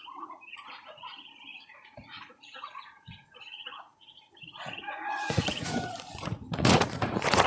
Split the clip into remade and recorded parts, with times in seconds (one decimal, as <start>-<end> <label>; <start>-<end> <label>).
0.0-7.5 remade